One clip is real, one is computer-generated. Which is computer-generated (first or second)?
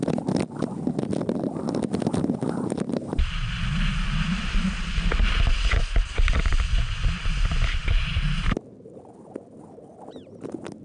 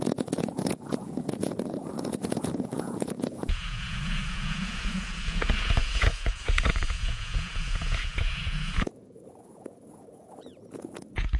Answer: second